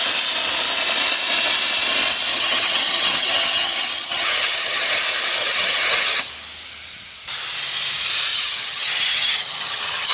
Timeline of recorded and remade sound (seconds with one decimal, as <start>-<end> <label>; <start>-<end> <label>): 0.0-2.3 recorded; 2.3-5.0 remade; 5.0-5.4 recorded; 5.4-6.3 remade; 6.3-8.3 recorded; 8.3-10.1 remade